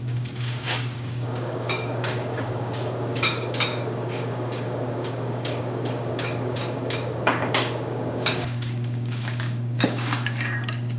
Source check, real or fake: fake